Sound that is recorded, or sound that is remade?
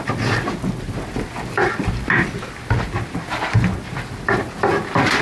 recorded